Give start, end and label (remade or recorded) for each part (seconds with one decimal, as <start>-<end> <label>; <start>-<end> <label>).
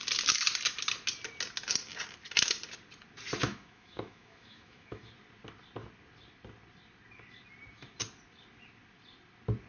0.0-3.4 recorded; 3.4-5.1 remade; 5.1-9.7 recorded